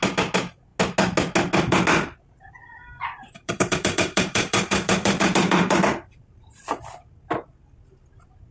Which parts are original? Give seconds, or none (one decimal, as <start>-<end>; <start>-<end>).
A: 0.0-3.2; 6.6-8.5